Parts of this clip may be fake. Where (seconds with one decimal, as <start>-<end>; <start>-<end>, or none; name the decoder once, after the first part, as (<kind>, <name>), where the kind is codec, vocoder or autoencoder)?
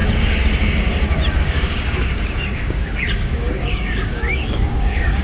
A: 1.4-5.2 (codec, DAC)